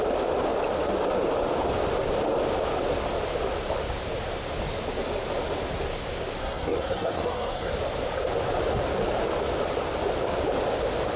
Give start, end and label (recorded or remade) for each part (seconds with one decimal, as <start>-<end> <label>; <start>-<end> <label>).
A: 0.0-6.4 recorded; 6.4-7.7 remade; 7.7-11.2 recorded